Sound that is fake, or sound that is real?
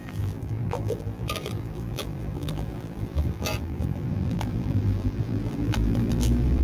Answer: fake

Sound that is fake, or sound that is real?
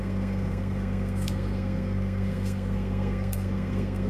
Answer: fake